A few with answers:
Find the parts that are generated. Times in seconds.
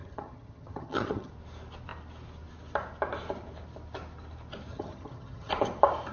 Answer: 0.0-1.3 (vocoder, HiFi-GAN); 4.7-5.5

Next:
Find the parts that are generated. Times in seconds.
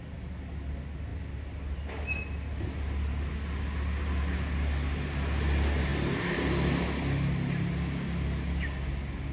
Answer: none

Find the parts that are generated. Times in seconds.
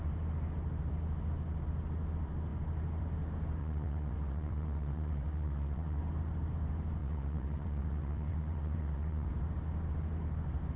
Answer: 3.6-6.0 (vocoder, WaveNeXt); 7.0-9.3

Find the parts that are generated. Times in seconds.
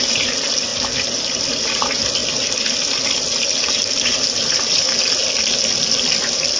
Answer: none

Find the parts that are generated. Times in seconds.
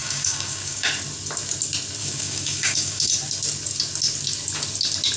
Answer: 0.0-0.9 (codec, DAC); 2.0-3.1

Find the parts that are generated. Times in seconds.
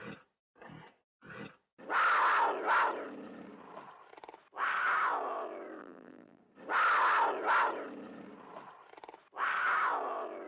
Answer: 5.8-6.4 (vocoder, BigVGAN v2)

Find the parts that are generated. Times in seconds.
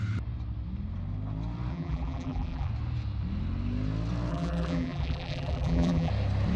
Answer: 1.7-2.7 (vocoder, BigVGAN v2); 4.3-6.1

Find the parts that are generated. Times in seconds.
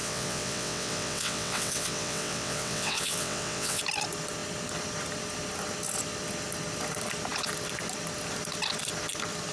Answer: 0.0-3.8 (vocoder, WaveNeXt)